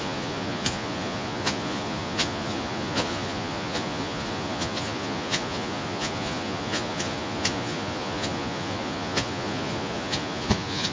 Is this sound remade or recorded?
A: remade